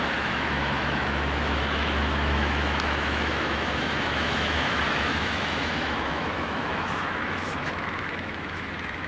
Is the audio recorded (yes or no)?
no